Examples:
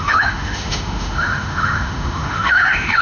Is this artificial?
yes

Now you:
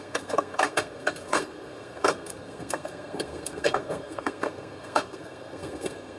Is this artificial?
yes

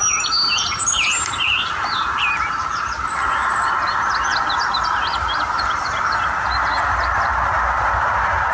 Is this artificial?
no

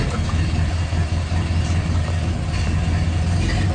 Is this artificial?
no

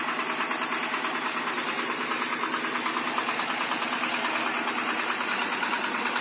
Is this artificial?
no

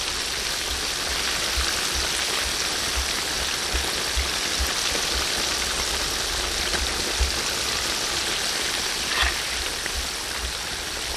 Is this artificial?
no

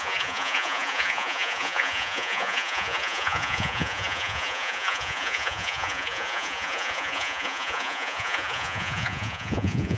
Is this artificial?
yes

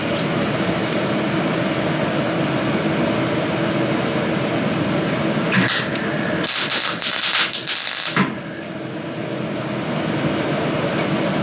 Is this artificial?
no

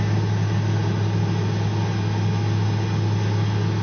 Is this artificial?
no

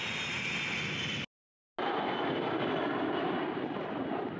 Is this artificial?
no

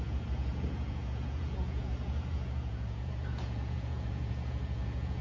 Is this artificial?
yes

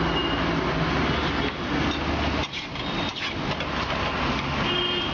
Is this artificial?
no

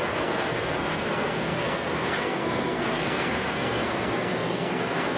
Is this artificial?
yes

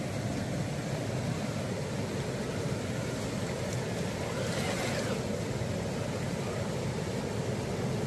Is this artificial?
no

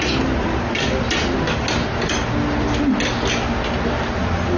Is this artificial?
no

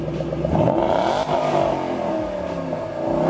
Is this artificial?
no